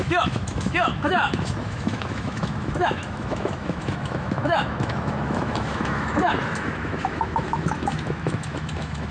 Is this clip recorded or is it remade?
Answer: remade